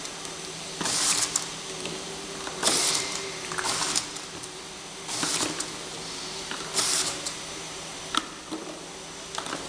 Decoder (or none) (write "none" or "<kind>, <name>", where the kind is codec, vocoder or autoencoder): none